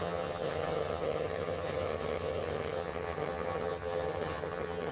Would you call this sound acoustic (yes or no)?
no